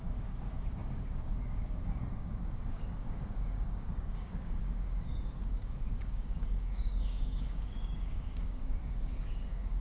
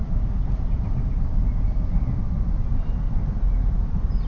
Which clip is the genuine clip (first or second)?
second